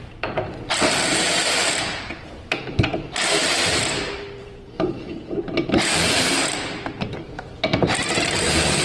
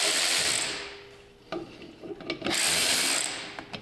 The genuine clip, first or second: second